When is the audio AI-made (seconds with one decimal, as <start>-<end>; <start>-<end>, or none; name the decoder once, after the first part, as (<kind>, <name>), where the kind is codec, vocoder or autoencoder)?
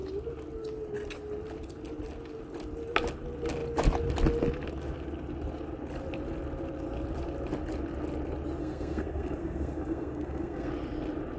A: 8.6-10.7 (codec, SNAC)